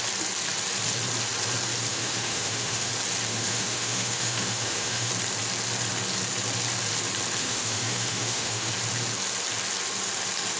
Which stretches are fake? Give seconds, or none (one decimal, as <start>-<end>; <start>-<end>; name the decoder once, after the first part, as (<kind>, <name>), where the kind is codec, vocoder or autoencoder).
1.9-2.9 (autoencoder, DAC-VAE); 3.3-5.1; 7.4-8.7